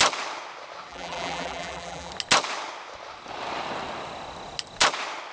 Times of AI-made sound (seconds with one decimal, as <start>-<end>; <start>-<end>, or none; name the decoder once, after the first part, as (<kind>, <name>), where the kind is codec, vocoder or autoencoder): 0.9-2.1 (vocoder, BigVGAN v2)